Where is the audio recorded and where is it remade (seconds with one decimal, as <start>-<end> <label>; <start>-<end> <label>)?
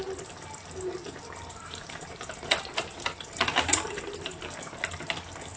0.0-1.0 recorded; 1.0-4.4 remade; 4.4-5.6 recorded